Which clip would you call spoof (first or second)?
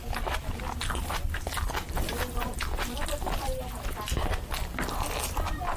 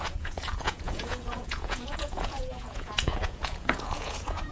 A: second